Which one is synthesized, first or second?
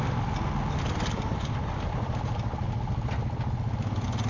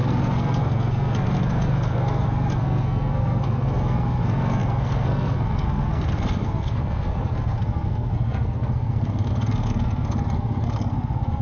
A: second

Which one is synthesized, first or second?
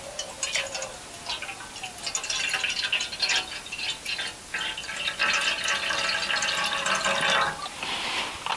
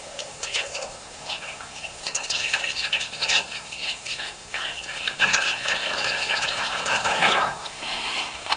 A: second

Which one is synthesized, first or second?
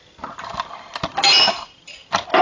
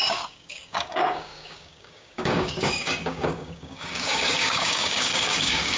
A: second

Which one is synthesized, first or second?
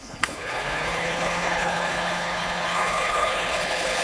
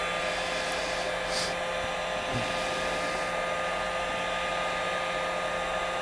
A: first